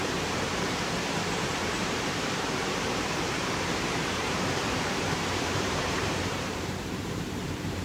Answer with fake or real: fake